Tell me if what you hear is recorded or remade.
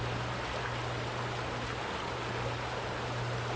recorded